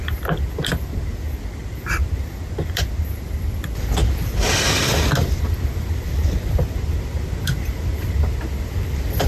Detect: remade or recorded recorded